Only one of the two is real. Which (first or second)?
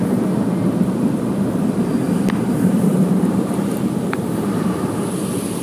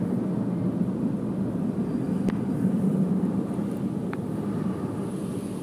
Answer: second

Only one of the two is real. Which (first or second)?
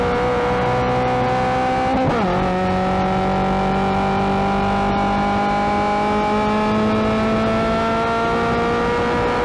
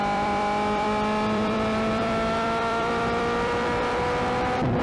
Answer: first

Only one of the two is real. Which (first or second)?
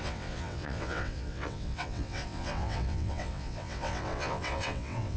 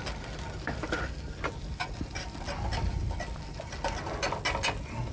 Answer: second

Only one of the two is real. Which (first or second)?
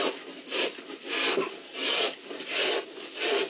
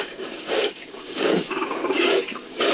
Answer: first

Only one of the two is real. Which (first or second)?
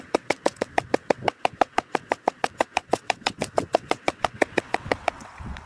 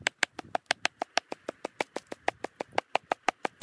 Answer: second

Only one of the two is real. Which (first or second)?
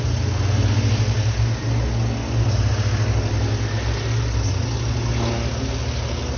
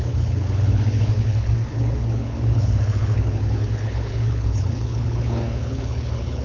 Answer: first